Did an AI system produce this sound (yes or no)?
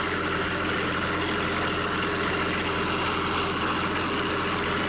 no